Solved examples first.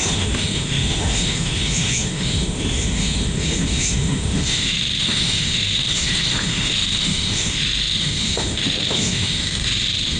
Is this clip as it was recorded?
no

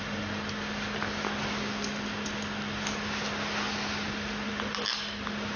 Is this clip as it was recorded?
yes